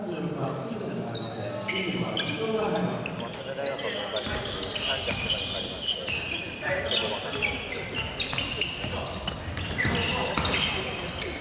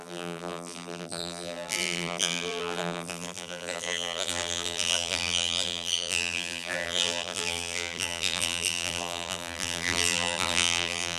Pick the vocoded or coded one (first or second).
second